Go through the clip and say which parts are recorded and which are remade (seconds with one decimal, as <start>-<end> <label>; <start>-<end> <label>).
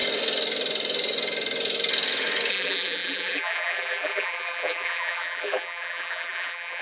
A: 0.0-2.5 recorded; 2.5-6.8 remade